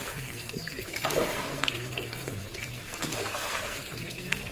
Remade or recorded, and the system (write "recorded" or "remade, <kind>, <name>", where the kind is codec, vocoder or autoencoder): remade, codec, SNAC